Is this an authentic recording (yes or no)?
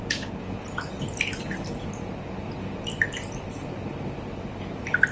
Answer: yes